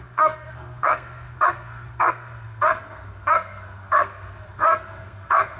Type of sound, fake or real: fake